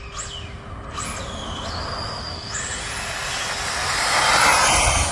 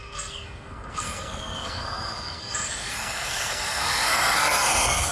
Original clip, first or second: first